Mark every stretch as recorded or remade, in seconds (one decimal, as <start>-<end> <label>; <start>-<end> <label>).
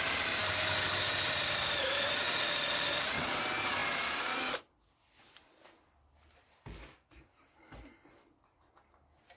0.0-0.4 recorded; 0.4-1.1 remade; 1.1-9.4 recorded